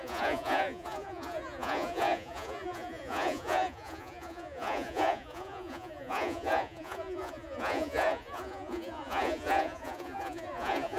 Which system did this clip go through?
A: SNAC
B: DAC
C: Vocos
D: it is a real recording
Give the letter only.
C